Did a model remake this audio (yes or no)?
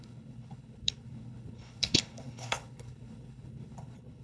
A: yes